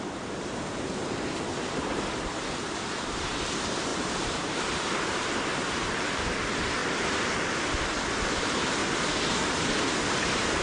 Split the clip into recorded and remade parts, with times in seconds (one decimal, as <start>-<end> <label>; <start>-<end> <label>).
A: 0.0-6.8 remade; 6.8-8.1 recorded; 8.1-8.8 remade; 8.8-10.1 recorded; 10.1-10.6 remade

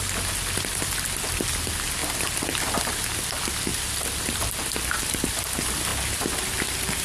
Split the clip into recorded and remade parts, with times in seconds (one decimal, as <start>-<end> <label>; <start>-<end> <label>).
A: 0.0-2.0 recorded; 2.0-2.9 remade; 2.9-3.7 recorded; 3.7-4.9 remade; 4.9-5.9 recorded; 5.9-7.0 remade

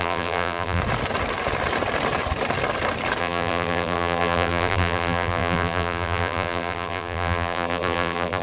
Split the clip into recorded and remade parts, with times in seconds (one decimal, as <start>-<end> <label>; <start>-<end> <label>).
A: 0.0-0.8 remade; 0.8-3.2 recorded; 3.2-8.4 remade

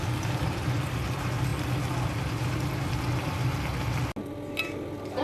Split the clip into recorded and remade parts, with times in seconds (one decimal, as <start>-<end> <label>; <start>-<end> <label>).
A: 0.0-5.2 recorded

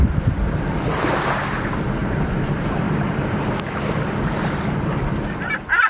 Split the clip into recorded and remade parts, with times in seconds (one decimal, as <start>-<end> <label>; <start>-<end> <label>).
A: 0.0-2.0 recorded; 2.0-3.5 remade; 3.5-5.9 recorded